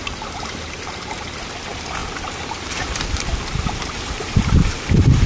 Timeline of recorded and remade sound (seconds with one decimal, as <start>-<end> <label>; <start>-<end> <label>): 0.0-1.4 remade; 1.4-2.0 recorded; 2.0-5.3 remade